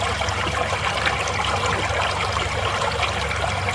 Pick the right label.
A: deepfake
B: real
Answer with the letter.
B